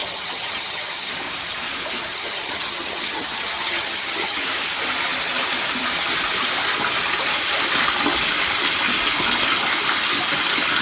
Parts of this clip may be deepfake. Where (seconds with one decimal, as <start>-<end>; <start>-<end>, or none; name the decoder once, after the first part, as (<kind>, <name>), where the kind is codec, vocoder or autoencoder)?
0.0-1.1 (vocoder, HiFi-GAN); 2.1-4.4